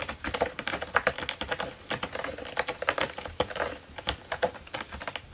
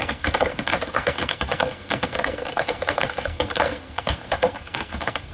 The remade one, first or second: second